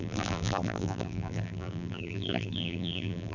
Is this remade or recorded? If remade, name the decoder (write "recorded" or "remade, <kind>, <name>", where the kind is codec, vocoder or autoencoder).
remade, vocoder, BigVGAN v2